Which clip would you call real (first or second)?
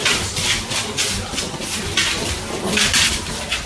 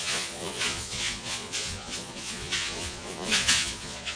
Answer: first